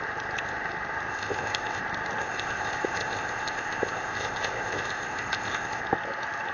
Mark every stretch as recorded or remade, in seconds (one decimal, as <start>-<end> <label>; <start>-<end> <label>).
0.0-1.1 recorded; 1.1-1.8 remade; 1.8-2.2 recorded; 2.2-5.8 remade; 5.8-6.5 recorded